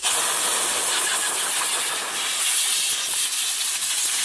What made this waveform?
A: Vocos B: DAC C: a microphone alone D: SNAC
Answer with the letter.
C